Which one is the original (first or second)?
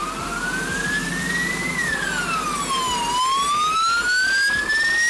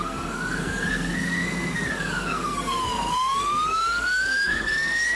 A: first